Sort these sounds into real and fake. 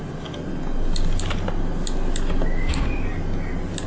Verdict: real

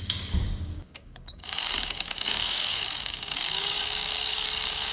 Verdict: fake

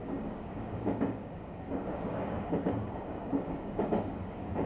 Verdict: fake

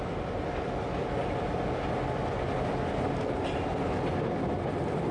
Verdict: real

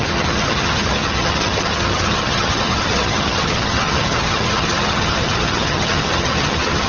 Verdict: fake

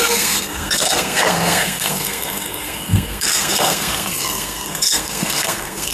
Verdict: fake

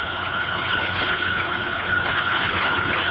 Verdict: fake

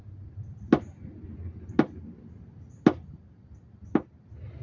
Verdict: real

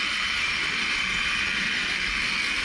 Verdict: real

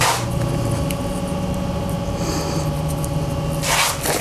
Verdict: real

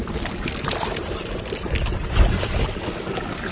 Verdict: real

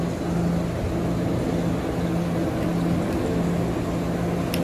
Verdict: real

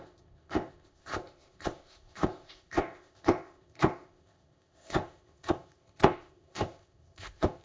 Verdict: fake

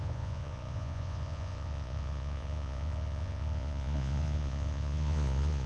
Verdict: fake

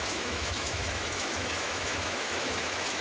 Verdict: fake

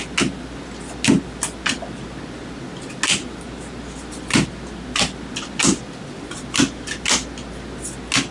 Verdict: real